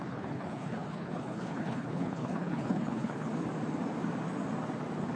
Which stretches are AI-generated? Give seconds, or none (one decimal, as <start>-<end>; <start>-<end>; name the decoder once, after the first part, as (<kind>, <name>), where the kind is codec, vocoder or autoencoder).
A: 0.0-3.3 (codec, HILCodec)